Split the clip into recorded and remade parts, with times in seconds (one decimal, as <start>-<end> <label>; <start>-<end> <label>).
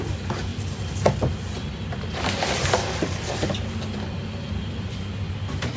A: 0.0-5.8 recorded